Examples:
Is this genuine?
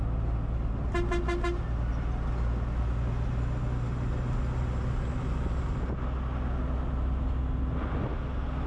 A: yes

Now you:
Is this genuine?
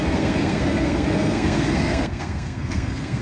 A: no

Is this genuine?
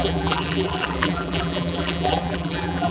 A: no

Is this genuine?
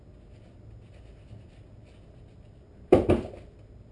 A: yes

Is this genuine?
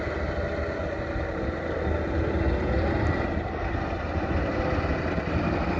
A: yes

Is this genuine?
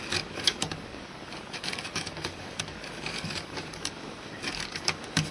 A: no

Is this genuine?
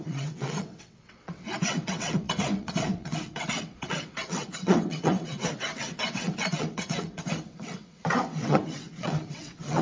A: no